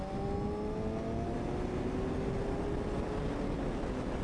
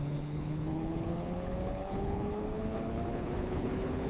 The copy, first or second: second